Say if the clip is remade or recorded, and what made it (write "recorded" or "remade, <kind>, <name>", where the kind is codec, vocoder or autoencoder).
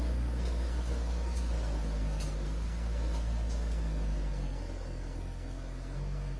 remade, codec, SNAC